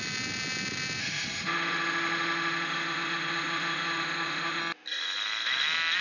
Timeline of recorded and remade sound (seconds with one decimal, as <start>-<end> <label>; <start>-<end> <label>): 0.0-1.0 recorded; 1.0-4.6 remade; 4.6-6.0 recorded